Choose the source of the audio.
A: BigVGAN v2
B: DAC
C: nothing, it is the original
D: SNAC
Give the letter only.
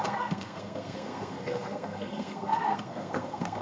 D